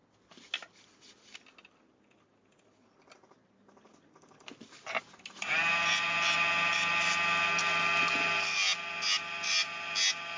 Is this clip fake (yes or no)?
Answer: no